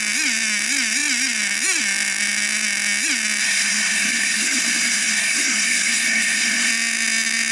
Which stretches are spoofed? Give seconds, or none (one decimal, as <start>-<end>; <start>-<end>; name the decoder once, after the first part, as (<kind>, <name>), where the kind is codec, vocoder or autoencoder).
3.4-6.7 (codec, SNAC)